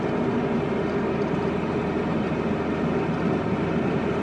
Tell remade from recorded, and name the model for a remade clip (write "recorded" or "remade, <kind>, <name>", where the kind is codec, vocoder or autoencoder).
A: recorded